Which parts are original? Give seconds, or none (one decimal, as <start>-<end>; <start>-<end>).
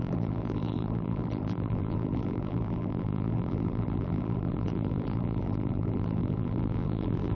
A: none